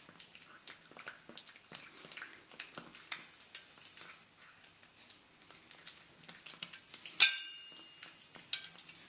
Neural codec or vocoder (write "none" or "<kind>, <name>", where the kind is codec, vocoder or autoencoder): none